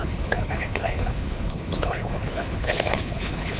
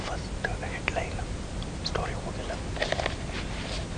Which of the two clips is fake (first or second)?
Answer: first